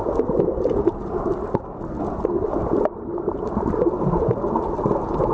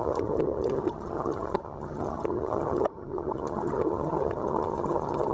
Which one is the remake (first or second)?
second